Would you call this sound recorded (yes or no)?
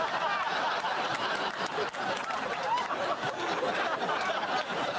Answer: yes